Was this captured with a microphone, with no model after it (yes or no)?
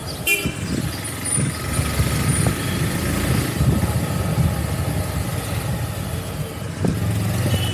yes